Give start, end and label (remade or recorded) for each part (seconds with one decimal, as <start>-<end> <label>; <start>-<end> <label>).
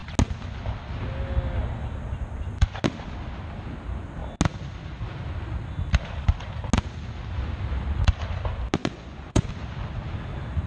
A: 0.0-8.8 recorded; 8.8-9.5 remade; 9.5-10.7 recorded